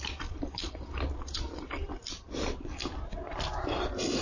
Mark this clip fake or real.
fake